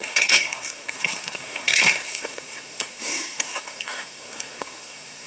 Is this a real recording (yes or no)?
no